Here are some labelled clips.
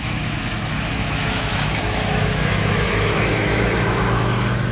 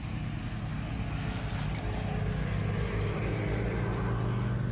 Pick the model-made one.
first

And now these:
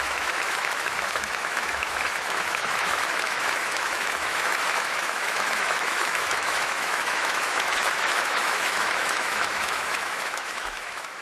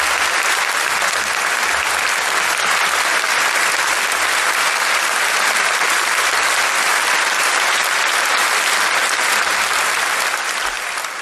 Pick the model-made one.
first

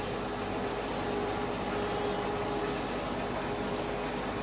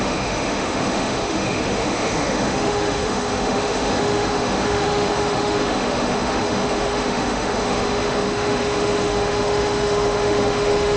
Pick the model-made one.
second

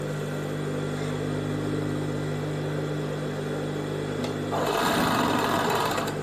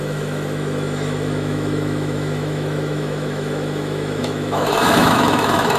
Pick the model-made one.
second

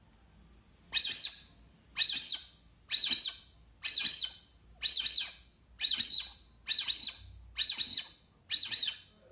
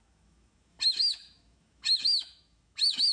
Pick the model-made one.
second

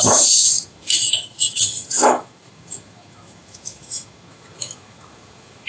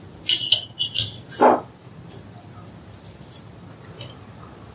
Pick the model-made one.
first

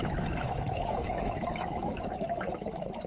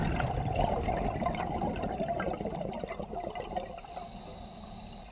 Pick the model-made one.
first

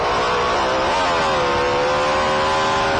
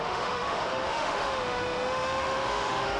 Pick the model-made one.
second